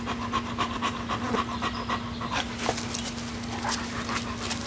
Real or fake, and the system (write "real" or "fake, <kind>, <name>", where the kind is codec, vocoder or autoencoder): real